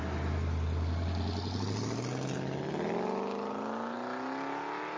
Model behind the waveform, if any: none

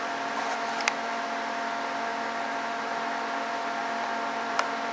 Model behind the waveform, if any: none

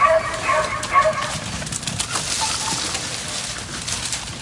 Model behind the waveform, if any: none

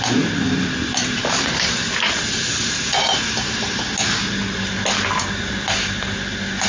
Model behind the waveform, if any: none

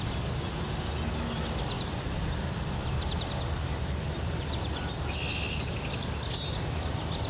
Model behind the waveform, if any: none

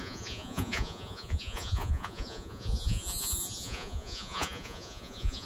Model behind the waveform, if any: vocoder, Vocos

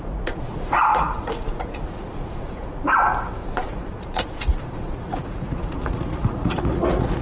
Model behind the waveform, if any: vocoder, Vocos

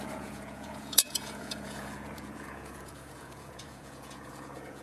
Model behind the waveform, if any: vocoder, Vocos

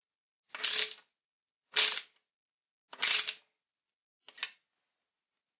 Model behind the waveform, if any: none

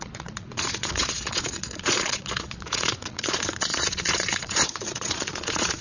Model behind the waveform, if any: vocoder, Vocos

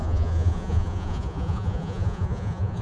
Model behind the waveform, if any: vocoder, Vocos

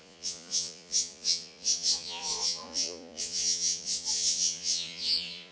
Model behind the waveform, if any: vocoder, Vocos